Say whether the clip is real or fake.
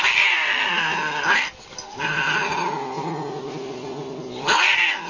real